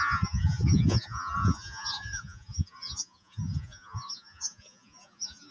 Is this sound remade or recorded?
remade